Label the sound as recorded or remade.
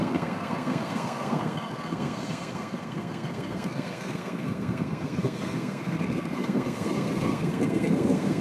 remade